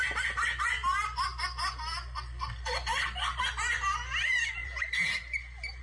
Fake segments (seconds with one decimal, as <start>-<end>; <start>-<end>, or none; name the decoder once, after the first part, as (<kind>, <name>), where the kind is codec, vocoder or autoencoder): 2.9-3.4 (vocoder, BigVGAN v2)